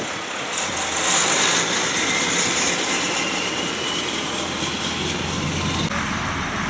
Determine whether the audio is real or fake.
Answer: real